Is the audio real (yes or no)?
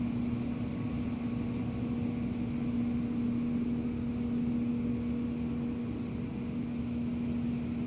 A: yes